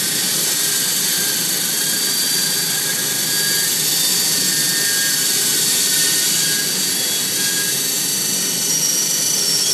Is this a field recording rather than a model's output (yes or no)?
yes